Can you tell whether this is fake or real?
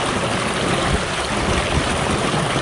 real